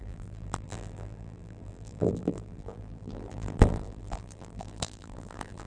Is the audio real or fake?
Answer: fake